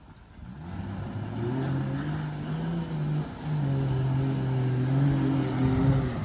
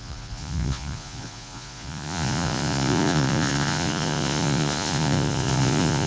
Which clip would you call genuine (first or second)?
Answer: first